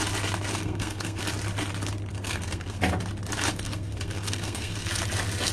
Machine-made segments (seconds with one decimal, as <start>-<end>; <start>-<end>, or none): 0.5-1.2; 2.1-2.8; 3.5-4.9